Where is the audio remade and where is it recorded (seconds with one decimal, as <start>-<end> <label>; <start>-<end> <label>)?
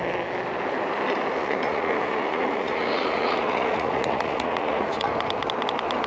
0.0-1.4 recorded; 1.4-5.1 remade; 5.1-6.1 recorded